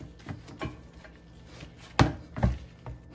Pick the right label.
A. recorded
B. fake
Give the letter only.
A